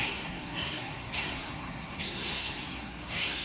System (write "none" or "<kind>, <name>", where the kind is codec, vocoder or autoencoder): codec, SNAC